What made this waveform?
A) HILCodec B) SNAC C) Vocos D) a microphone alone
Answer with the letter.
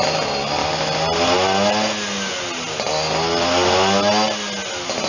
D